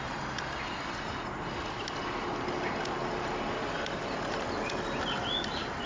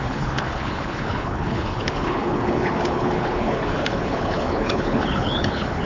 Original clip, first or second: first